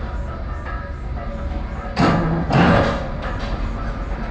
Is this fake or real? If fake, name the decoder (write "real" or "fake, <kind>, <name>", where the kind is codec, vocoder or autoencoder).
real